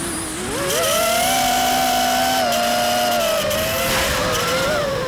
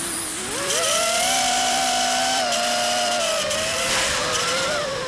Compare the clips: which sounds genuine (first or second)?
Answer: first